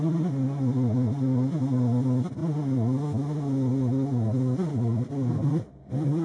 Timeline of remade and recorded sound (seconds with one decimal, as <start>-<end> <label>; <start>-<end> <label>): 0.0-6.2 recorded